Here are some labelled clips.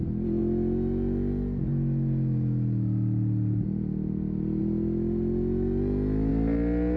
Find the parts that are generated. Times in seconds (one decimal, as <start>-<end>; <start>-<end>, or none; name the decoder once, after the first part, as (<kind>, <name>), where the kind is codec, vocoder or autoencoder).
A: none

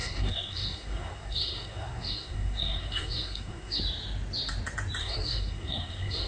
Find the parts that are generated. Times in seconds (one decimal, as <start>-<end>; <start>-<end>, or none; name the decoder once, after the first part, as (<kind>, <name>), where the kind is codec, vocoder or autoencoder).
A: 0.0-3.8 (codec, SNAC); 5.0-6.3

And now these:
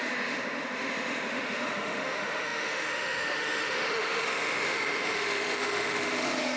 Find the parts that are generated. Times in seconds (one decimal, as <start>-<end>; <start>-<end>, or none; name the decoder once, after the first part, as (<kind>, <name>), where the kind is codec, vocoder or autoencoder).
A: 0.0-6.6 (autoencoder, DAC-VAE)

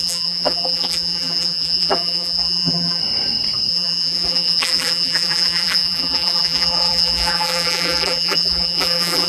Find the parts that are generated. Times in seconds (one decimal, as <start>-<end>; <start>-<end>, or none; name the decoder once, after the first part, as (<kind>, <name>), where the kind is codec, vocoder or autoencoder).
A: 0.0-3.0 (vocoder, BigVGAN v2); 3.7-9.3

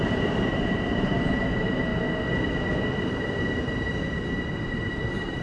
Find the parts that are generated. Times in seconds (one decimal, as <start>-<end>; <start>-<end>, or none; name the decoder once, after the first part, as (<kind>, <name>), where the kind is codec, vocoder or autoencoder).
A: 0.0-1.9 (vocoder, BigVGAN v2); 3.0-5.4

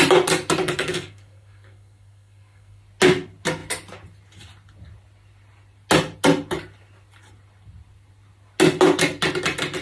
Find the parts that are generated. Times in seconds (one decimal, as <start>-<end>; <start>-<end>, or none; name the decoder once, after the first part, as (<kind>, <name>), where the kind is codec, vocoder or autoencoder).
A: 0.6-2.8 (codec, SNAC)